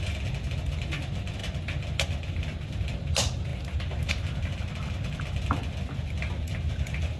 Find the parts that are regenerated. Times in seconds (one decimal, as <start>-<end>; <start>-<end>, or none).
none